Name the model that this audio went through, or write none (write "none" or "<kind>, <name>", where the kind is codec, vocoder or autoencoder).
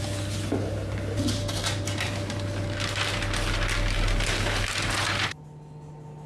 none